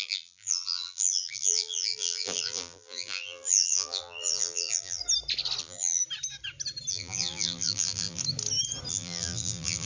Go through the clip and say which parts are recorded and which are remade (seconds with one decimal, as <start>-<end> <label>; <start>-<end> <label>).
0.0-5.0 remade; 5.0-5.6 recorded; 5.6-6.0 remade; 6.0-6.9 recorded; 6.9-8.2 remade; 8.2-8.9 recorded; 8.9-9.9 remade